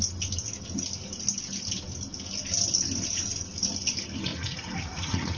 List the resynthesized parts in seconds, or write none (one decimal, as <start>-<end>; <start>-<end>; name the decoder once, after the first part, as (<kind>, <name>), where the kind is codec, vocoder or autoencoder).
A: 4.3-5.4 (vocoder, Vocos)